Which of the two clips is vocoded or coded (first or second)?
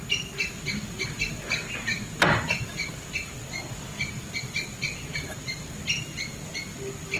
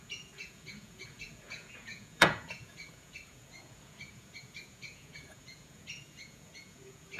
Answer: second